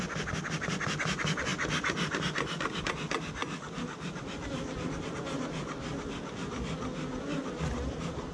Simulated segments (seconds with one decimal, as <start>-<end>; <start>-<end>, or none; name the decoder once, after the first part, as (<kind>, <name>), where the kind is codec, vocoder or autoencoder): none